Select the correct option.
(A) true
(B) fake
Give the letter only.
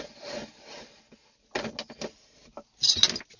A